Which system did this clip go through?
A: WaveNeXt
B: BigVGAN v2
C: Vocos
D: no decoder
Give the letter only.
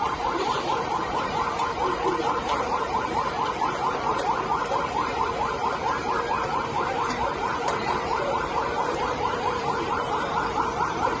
B